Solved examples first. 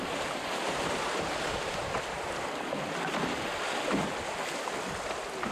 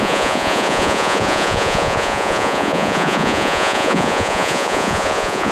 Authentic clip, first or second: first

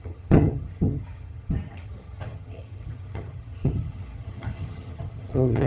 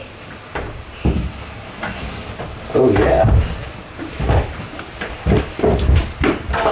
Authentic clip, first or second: second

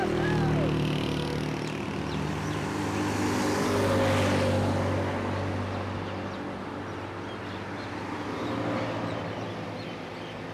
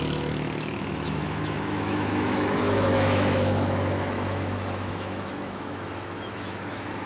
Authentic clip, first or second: first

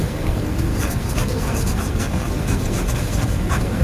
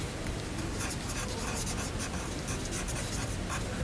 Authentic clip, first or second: second